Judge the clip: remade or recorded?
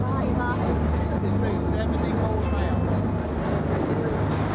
recorded